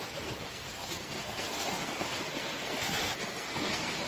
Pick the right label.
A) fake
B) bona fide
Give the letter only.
A